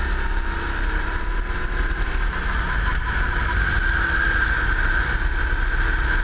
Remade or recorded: recorded